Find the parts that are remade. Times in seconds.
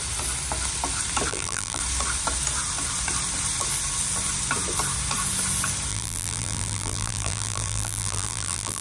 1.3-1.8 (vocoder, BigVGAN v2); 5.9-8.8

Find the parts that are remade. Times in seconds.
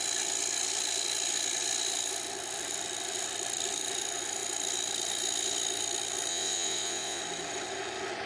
6.3-7.2 (vocoder, Vocos)